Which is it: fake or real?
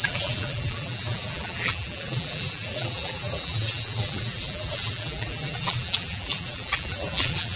fake